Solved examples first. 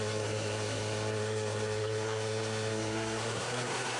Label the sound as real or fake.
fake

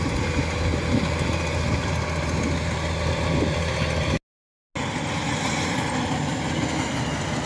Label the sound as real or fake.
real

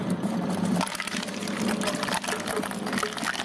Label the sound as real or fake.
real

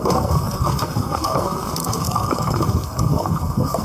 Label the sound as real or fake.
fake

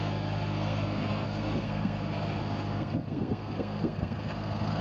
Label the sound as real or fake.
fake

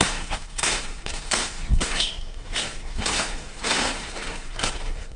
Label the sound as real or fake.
fake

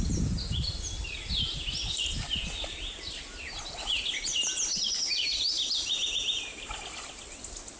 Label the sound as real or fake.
real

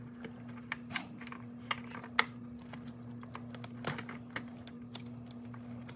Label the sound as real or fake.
real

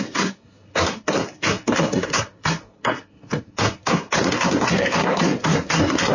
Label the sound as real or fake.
fake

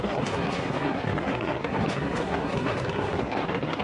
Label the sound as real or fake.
fake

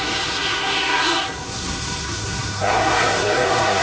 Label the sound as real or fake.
fake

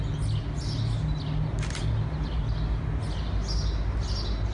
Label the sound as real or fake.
real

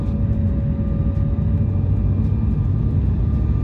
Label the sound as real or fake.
real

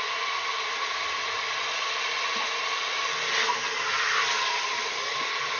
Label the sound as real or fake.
real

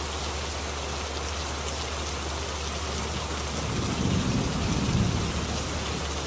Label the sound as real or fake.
real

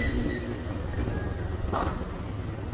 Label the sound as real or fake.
real